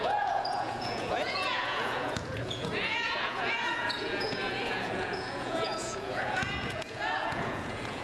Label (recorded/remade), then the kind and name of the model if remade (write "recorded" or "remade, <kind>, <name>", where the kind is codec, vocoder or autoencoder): remade, vocoder, Vocos